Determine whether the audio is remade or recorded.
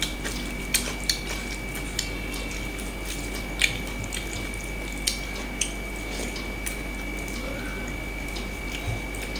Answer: recorded